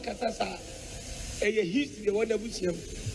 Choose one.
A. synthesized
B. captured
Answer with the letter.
B